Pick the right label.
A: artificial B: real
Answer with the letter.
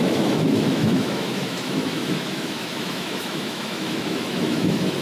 A